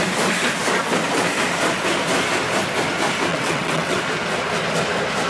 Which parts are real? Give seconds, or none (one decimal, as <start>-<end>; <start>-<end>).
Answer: 0.0-3.3; 4.0-5.3

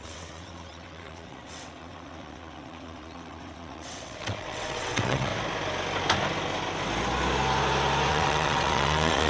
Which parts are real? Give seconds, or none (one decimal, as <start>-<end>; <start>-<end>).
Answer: 5.3-8.1

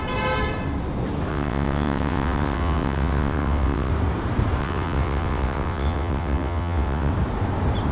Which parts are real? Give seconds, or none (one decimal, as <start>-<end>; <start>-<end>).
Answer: 0.0-1.3; 3.9-4.6; 7.1-7.9

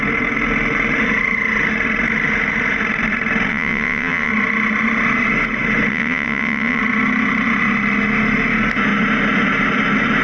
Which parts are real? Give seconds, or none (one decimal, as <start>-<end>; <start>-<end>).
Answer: 0.0-3.5; 4.3-5.9; 6.8-10.2

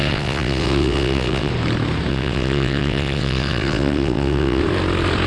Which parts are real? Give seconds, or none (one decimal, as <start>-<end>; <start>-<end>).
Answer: 1.5-2.1; 4.6-5.3